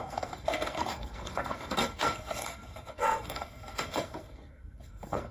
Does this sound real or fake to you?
fake